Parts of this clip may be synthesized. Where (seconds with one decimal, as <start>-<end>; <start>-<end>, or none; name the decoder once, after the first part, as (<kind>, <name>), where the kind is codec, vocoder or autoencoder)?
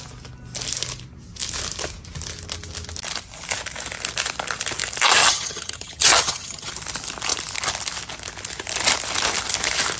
5.2-6.7 (vocoder, HiFi-GAN)